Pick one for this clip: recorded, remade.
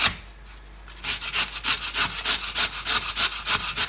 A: recorded